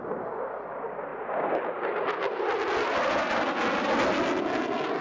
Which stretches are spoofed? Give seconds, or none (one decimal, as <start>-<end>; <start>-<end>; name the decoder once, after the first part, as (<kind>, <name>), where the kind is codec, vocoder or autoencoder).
none